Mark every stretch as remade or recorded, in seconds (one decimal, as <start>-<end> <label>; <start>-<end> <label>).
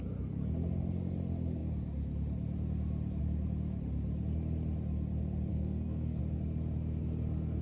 0.0-5.5 recorded; 5.5-6.2 remade; 6.2-7.6 recorded